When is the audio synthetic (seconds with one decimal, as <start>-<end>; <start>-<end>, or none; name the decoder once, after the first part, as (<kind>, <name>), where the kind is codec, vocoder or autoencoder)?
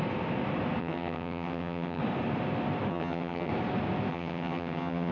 0.8-2.0 (vocoder, HiFi-GAN); 2.9-3.5; 4.1-5.1